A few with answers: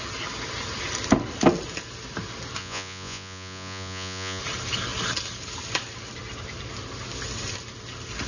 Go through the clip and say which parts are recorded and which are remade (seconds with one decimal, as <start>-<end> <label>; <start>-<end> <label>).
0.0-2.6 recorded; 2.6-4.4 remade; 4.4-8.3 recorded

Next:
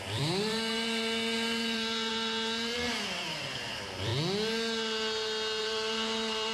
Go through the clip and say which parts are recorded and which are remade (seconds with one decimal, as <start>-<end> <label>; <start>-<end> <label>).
0.0-4.1 remade; 4.1-5.6 recorded; 5.6-6.5 remade

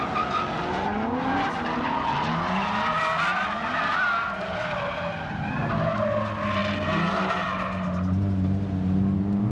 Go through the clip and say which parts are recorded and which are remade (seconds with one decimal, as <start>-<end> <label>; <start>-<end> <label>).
0.0-9.5 recorded

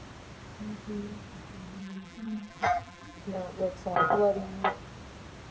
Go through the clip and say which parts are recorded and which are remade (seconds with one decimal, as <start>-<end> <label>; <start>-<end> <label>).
0.0-1.8 recorded; 1.8-3.2 remade; 3.2-5.5 recorded

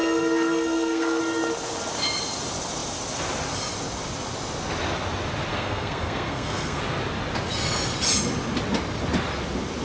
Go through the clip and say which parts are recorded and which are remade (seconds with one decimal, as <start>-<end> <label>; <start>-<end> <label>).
0.0-1.2 remade; 1.2-5.5 recorded; 5.5-6.8 remade; 6.8-9.8 recorded

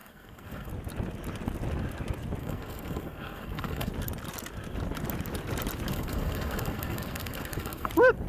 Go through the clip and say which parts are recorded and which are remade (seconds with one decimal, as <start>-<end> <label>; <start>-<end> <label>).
0.0-0.7 remade; 0.7-2.4 recorded; 2.4-3.9 remade; 3.9-5.9 recorded; 5.9-7.9 remade; 7.9-8.3 recorded